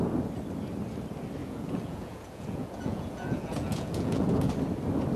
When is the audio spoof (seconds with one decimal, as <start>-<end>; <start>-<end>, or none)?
1.4-4.5

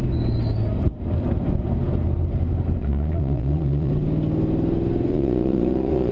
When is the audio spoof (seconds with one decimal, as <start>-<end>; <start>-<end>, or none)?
2.8-3.9; 5.1-6.1

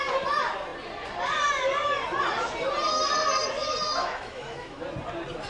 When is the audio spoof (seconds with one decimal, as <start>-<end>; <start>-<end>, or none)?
4.0-4.8

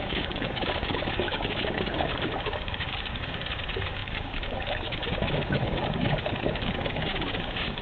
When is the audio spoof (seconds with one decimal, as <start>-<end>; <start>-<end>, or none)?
0.0-7.8

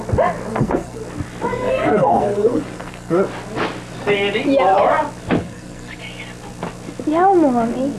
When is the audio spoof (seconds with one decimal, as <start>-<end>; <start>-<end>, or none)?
0.5-1.0; 1.5-3.2; 5.4-6.0

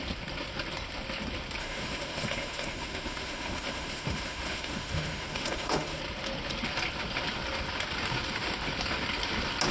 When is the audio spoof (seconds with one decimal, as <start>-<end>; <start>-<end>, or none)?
1.6-6.0